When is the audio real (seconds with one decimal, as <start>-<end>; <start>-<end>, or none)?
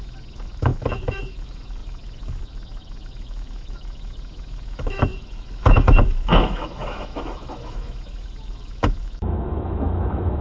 none